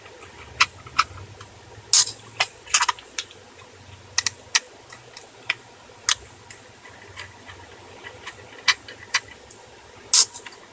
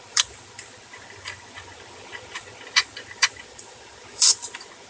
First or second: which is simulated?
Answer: second